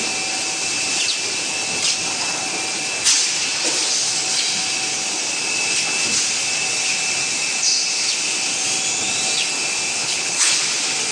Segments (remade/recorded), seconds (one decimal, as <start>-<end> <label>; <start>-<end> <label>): 0.0-10.0 recorded; 10.0-10.6 remade; 10.6-11.1 recorded